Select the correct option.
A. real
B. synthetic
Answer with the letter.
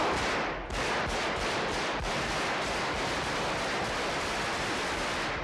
A